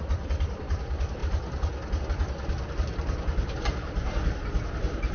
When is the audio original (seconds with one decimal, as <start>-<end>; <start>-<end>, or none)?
0.0-5.1